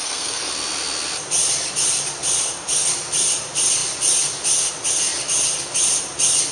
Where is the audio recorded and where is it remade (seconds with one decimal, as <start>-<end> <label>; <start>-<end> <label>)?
0.0-0.5 remade; 0.5-6.5 recorded